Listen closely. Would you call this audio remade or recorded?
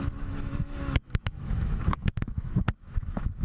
remade